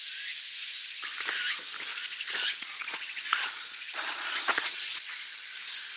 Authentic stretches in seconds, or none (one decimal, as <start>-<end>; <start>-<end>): 0.0-1.9; 5.5-6.0

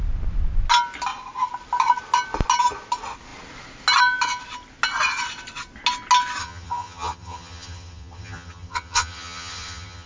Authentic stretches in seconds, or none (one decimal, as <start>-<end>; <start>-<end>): 0.0-6.4